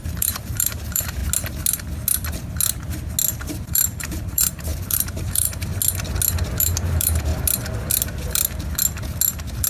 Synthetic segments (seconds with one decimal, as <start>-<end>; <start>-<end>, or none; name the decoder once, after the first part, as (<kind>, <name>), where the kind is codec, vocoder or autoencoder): 0.0-1.2 (vocoder, BigVGAN v2); 3.4-5.7; 6.6-7.3